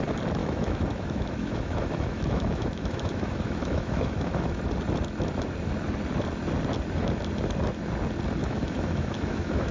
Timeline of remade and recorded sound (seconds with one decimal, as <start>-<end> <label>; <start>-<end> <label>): 0.0-0.4 recorded; 0.4-4.6 remade; 4.6-8.4 recorded; 8.4-9.7 remade